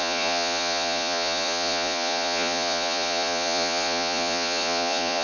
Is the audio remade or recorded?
remade